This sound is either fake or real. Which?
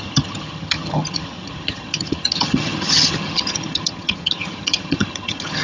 fake